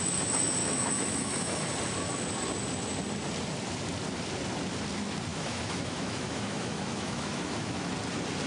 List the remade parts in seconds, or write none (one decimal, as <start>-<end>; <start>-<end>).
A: 0.6-1.6; 5.3-7.9

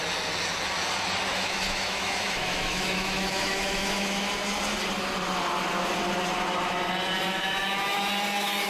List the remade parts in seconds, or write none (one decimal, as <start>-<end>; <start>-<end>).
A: 1.3-4.3; 7.3-8.1

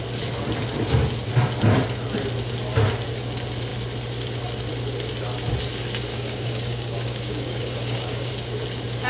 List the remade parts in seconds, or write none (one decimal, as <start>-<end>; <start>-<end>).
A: 6.1-8.3

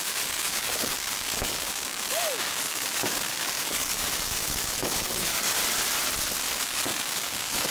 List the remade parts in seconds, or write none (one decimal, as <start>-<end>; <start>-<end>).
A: 0.0-5.6; 6.5-7.7

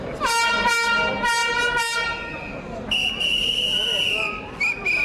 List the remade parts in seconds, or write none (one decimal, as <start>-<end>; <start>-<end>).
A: none

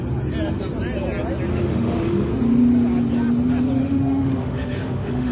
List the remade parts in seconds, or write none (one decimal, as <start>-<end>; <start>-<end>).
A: 1.5-2.3; 3.8-5.3